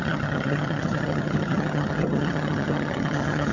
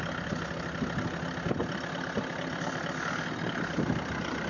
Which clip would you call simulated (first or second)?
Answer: first